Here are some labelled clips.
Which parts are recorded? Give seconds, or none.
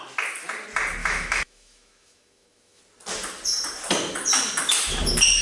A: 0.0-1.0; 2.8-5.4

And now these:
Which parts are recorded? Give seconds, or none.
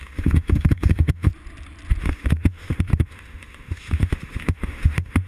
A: 1.3-2.0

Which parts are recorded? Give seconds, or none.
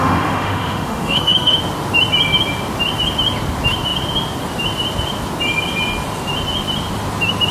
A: 1.6-7.5